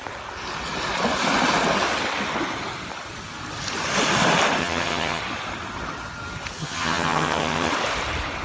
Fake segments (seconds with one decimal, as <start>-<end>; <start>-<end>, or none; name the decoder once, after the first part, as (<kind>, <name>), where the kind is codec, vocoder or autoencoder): 4.6-5.2 (vocoder, HiFi-GAN); 6.6-7.7